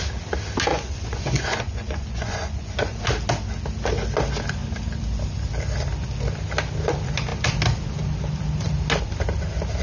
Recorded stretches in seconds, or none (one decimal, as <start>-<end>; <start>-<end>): 0.0-0.7; 3.0-9.8